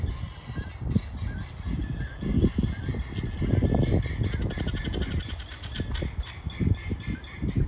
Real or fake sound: real